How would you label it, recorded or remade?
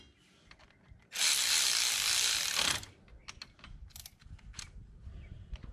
recorded